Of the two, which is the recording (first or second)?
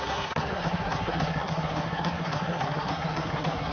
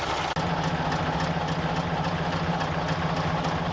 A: second